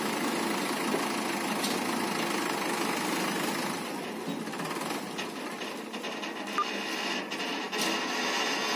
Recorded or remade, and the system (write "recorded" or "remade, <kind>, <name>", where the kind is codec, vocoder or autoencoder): recorded